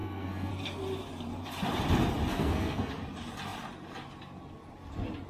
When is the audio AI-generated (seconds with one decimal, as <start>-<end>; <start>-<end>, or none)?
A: 0.0-0.5; 2.3-2.9